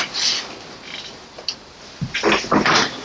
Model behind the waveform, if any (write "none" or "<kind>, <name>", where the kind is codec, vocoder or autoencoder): none